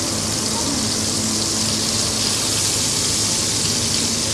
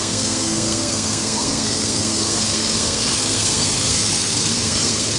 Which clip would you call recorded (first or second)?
first